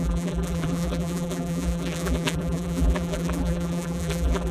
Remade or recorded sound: remade